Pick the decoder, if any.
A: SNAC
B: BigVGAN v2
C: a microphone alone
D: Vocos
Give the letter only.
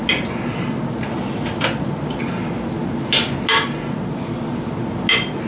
C